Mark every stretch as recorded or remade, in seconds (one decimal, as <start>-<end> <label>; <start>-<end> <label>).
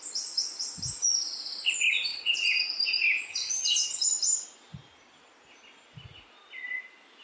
0.0-3.3 recorded; 3.3-4.0 remade; 4.0-7.2 recorded